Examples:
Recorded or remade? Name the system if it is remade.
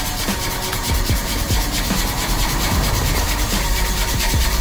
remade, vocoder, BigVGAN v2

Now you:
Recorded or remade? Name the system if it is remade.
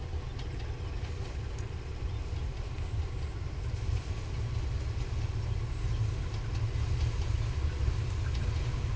recorded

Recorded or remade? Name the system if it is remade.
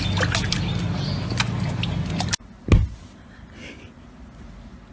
recorded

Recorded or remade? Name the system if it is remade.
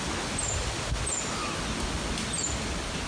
recorded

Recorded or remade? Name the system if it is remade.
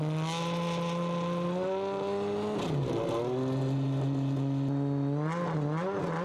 recorded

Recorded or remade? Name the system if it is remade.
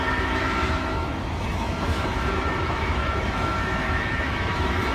remade, autoencoder, DAC-VAE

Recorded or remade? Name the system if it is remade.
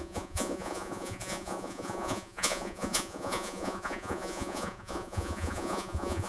remade, vocoder, Vocos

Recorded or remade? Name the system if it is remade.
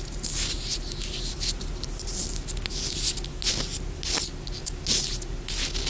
recorded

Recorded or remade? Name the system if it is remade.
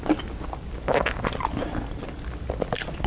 recorded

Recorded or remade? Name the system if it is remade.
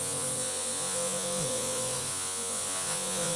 remade, vocoder, Vocos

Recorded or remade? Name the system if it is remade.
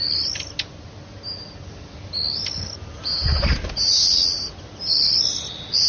recorded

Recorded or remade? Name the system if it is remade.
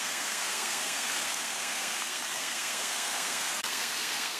remade, codec, SNAC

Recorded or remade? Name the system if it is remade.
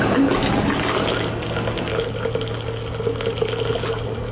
recorded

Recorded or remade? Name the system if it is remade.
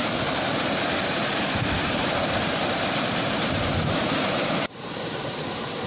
remade, vocoder, BigVGAN v2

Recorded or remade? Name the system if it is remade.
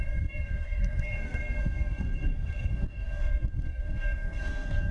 remade, codec, SNAC